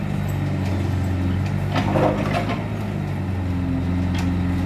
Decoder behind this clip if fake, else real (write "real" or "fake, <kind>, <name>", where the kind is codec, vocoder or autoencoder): real